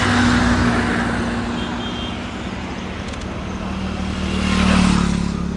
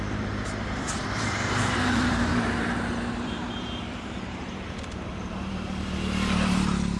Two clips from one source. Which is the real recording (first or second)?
first